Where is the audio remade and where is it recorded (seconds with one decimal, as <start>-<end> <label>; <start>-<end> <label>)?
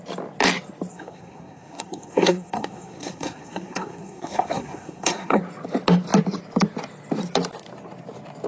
0.0-0.9 recorded; 0.9-5.4 remade; 5.4-8.5 recorded